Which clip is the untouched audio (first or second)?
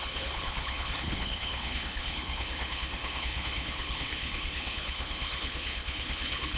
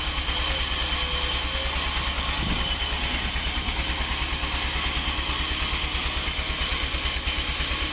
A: second